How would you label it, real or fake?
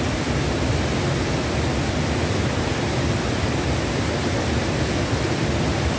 real